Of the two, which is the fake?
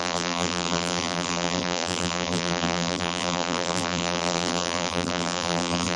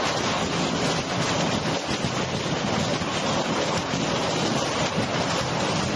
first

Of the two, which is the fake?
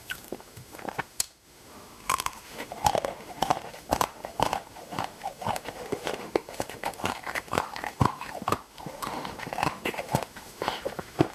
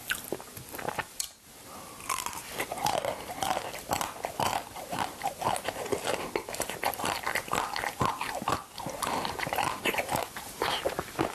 first